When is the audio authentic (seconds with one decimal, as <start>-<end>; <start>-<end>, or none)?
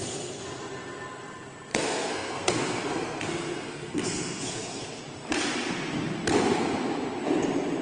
0.0-1.7; 5.0-7.8